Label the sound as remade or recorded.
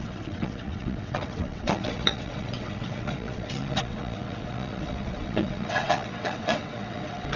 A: remade